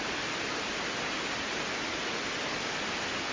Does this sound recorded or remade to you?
recorded